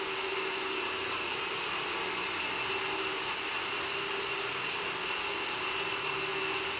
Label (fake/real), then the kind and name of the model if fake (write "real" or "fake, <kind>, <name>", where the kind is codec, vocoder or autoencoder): real